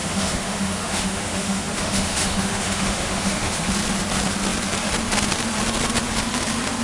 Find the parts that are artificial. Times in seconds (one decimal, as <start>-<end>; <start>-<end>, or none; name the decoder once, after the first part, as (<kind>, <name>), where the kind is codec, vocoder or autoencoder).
0.0-3.7 (autoencoder, DAC-VAE)